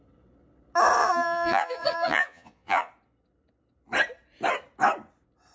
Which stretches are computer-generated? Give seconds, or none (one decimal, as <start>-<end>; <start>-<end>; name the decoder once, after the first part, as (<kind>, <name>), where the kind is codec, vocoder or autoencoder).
1.0-2.9 (vocoder, Vocos)